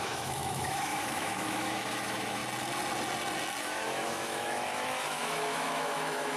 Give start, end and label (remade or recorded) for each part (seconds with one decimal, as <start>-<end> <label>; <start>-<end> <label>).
0.0-2.4 remade; 2.4-3.6 recorded; 3.6-6.4 remade